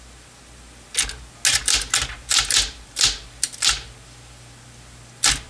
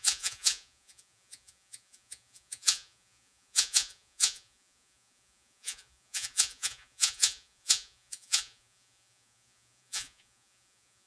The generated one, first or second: second